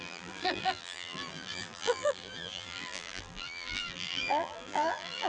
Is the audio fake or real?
fake